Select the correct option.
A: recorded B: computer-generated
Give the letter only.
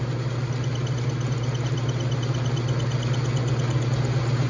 A